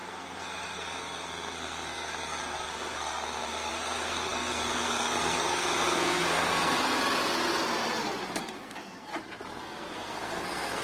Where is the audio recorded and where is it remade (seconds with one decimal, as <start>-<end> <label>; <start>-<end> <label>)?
0.0-6.9 remade; 6.9-8.4 recorded; 8.4-9.1 remade; 9.1-9.6 recorded; 9.6-10.8 remade